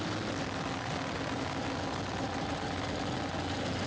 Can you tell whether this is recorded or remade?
recorded